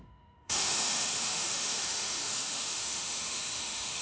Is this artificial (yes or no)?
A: yes